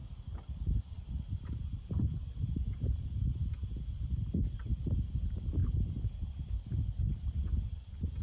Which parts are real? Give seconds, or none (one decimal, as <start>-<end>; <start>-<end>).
4.7-5.6